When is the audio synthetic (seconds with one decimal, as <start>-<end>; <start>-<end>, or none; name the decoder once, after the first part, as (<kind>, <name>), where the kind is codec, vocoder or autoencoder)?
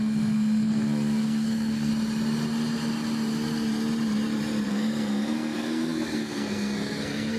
0.0-1.9 (codec, SNAC); 4.7-7.4